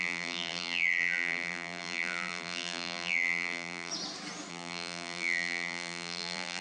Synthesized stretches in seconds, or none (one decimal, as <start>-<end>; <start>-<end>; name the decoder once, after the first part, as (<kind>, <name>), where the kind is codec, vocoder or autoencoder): 0.0-3.9 (vocoder, BigVGAN v2); 4.5-6.6

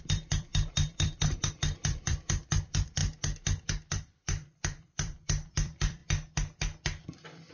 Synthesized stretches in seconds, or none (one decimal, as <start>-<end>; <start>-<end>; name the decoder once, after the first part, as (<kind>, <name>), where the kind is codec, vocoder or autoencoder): 0.0-3.0 (vocoder, BigVGAN v2); 3.9-6.0